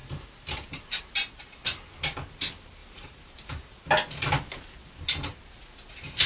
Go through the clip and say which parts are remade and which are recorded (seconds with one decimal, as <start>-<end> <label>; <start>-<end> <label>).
0.0-1.0 remade; 1.0-2.8 recorded; 2.8-3.8 remade; 3.8-6.3 recorded